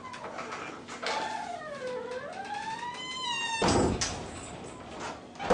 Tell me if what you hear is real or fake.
real